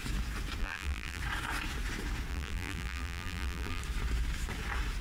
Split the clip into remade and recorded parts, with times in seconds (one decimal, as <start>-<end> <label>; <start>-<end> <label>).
0.0-0.6 recorded; 0.6-1.2 remade; 1.2-2.3 recorded; 2.3-3.8 remade; 3.8-5.0 recorded